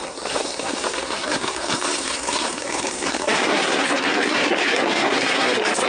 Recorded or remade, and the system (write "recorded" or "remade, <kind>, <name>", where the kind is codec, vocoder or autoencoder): remade, codec, SNAC